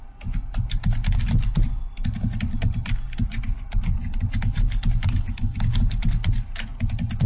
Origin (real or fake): real